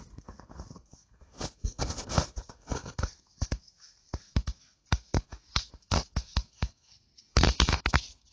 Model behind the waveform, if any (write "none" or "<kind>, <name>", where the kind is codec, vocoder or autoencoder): codec, SNAC